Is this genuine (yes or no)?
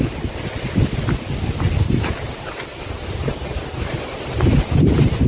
yes